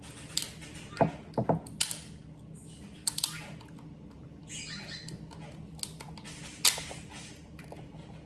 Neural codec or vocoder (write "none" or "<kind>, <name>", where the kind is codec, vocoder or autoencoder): none